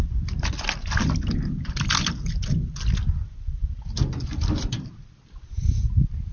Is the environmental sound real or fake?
real